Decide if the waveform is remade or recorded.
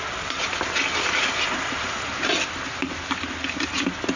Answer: recorded